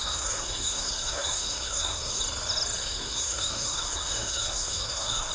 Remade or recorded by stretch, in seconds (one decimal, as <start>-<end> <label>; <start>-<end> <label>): 0.0-2.2 remade; 2.2-2.8 recorded; 2.8-5.3 remade